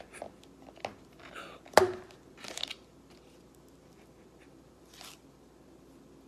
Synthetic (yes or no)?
no